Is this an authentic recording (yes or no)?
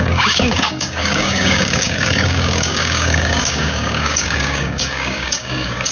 no